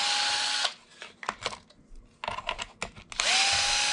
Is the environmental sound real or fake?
real